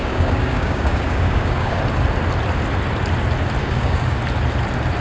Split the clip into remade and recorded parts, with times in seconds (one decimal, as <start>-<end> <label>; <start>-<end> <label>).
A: 0.0-1.8 remade; 1.8-3.6 recorded; 3.6-4.2 remade; 4.2-5.0 recorded